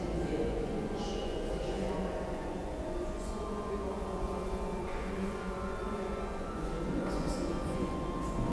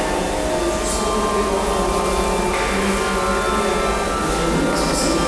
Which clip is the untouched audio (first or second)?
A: second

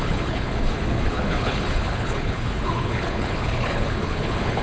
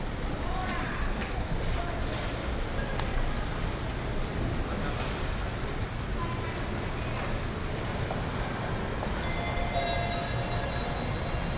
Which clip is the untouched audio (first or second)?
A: second